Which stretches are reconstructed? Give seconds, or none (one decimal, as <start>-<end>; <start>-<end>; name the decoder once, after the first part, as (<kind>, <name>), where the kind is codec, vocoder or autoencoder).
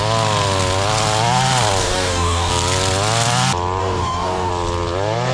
1.8-2.5 (codec, DAC); 3.8-4.5